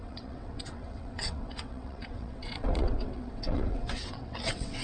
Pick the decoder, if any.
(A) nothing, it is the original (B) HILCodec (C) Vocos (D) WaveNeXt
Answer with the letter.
D